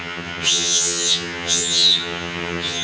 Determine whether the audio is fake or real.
fake